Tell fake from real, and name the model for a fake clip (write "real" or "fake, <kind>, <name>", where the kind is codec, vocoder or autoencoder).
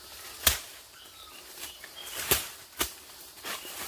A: fake, vocoder, BigVGAN v2